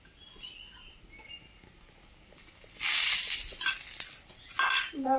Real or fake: real